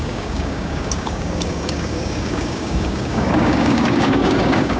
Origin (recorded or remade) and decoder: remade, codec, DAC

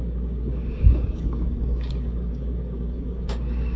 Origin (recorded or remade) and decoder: remade, codec, DAC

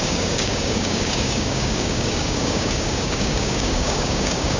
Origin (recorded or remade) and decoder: remade, codec, DAC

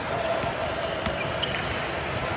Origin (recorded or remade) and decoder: recorded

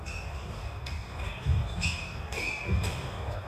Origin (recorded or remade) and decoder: remade, codec, DAC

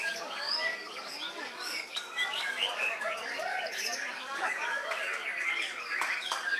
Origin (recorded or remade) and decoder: remade, codec, DAC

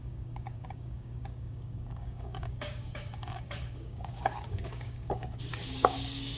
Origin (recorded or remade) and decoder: remade, codec, DAC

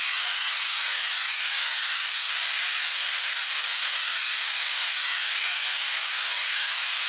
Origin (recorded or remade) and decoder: remade, codec, DAC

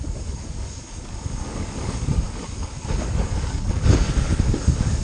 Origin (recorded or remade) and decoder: remade, codec, DAC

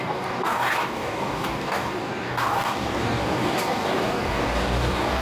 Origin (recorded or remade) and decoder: remade, codec, DAC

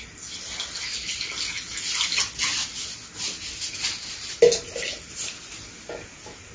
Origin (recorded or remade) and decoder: recorded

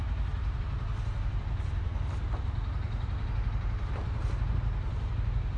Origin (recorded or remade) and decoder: recorded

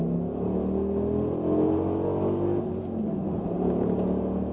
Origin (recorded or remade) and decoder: recorded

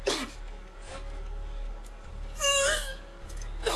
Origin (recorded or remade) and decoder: remade, codec, DAC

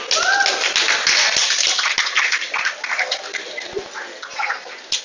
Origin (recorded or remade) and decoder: recorded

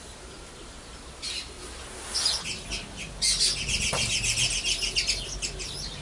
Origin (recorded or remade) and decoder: recorded